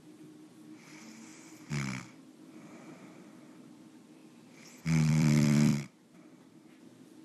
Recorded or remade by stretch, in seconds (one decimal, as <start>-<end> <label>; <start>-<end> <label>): 0.0-7.2 remade